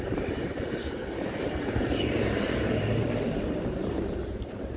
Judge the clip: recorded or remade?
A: remade